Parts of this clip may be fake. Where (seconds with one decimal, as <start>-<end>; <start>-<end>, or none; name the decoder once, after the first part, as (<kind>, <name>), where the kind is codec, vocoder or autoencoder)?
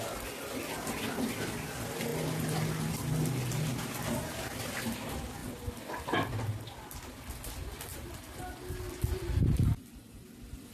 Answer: 7.9-8.4 (vocoder, BigVGAN v2)